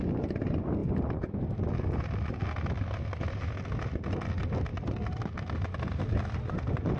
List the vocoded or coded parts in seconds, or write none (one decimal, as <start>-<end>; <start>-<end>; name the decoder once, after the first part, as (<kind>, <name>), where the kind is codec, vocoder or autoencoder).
none

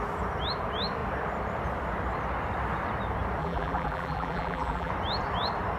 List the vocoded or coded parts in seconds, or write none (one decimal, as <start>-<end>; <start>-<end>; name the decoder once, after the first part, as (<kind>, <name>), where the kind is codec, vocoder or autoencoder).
3.4-4.9 (vocoder, BigVGAN v2)

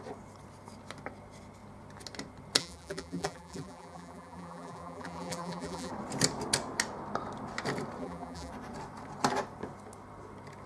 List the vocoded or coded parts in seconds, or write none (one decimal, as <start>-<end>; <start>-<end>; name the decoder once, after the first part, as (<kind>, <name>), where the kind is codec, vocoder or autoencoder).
2.6-5.9 (vocoder, BigVGAN v2); 8.0-8.5

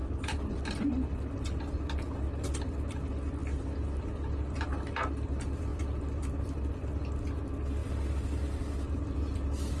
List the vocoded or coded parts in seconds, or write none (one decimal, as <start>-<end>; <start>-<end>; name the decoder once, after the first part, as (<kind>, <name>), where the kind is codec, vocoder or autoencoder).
0.0-0.9 (vocoder, BigVGAN v2); 5.7-6.7

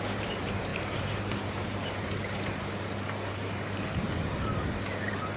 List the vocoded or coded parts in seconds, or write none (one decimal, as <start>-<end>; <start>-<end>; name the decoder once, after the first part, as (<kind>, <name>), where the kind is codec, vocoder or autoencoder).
0.0-5.4 (vocoder, BigVGAN v2)

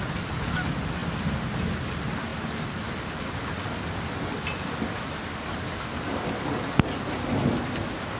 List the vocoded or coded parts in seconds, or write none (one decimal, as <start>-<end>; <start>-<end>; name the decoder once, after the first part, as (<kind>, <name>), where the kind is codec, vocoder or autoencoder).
none